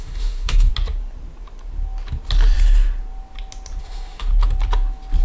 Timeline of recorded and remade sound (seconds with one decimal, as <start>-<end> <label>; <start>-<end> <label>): 0.0-0.7 remade; 0.7-3.8 recorded; 3.8-4.3 remade; 4.3-5.2 recorded